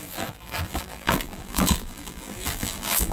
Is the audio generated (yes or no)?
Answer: yes